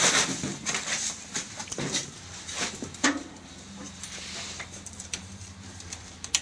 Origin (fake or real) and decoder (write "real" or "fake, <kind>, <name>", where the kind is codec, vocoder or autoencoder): fake, vocoder, BigVGAN v2